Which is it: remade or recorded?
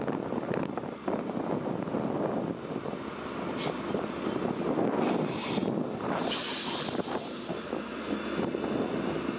recorded